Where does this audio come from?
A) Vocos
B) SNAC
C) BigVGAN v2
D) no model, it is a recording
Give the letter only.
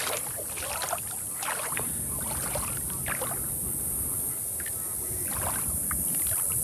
D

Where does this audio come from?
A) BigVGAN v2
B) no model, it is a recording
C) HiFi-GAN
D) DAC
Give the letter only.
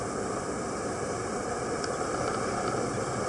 B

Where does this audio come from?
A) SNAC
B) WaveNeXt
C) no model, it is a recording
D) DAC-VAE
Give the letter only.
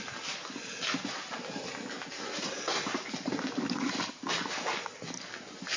C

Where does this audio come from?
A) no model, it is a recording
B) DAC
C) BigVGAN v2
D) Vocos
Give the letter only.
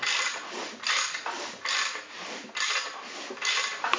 A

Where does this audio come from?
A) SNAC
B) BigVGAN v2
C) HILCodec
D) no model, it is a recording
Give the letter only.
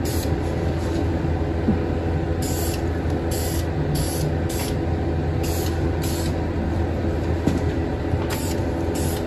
D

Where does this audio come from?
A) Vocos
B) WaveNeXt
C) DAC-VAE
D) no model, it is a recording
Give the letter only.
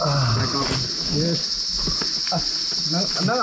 D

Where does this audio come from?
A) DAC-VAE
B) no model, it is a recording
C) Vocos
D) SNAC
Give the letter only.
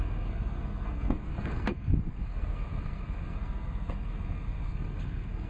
D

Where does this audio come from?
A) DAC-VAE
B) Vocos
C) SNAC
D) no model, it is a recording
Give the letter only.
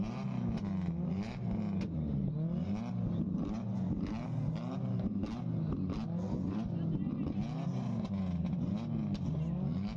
D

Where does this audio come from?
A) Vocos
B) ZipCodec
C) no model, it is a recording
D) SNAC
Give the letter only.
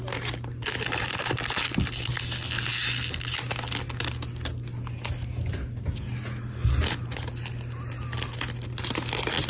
C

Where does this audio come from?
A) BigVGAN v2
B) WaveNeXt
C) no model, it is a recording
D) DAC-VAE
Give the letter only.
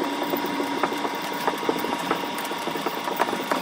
A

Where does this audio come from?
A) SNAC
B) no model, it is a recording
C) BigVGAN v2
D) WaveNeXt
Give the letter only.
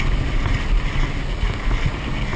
B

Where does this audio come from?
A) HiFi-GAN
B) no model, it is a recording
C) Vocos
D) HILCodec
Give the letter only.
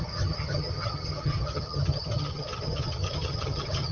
A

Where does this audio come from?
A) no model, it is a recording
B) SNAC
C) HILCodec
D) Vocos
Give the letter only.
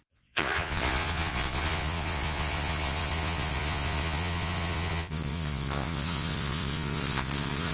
D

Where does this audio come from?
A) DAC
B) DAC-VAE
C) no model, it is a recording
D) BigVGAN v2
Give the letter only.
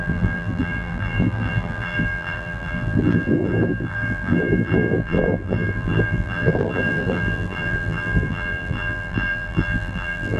D